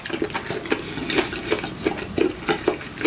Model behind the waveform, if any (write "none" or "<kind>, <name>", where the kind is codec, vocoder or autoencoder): none